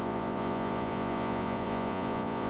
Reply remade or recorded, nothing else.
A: remade